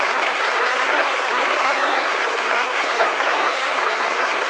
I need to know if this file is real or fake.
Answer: fake